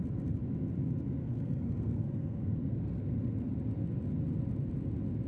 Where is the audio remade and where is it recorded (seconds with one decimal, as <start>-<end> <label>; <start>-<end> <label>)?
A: 0.0-1.2 recorded; 1.2-3.5 remade; 3.5-5.3 recorded